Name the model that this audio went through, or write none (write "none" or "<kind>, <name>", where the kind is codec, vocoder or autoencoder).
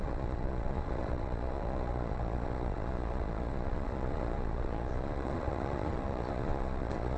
vocoder, Vocos